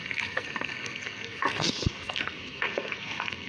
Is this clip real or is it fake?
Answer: fake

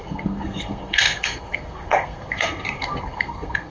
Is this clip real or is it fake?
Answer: fake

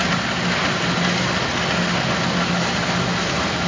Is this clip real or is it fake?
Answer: real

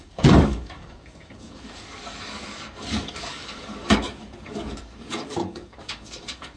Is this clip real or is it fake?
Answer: fake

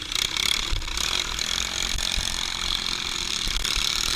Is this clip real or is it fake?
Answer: real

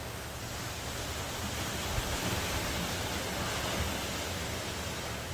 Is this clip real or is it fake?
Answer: real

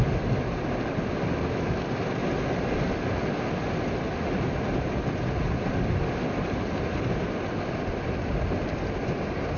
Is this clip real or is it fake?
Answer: real